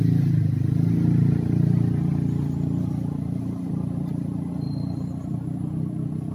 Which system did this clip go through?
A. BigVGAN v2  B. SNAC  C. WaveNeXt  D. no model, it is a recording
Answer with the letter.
D